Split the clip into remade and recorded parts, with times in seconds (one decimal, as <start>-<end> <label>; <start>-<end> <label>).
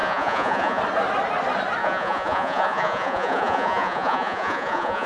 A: 0.0-0.8 remade; 0.8-1.8 recorded; 1.8-5.1 remade